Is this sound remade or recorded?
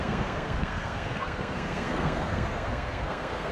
remade